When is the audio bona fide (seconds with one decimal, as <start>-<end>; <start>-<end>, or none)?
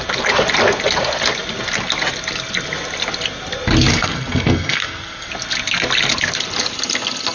0.0-3.9; 5.3-7.3